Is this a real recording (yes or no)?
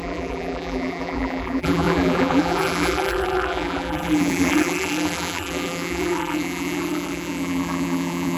no